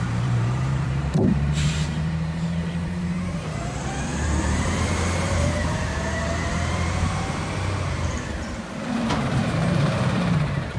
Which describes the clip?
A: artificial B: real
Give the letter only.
A